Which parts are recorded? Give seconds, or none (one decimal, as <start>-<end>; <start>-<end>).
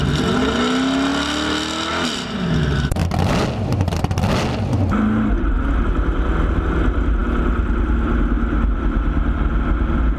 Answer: 0.0-10.2